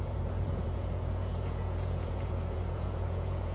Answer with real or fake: fake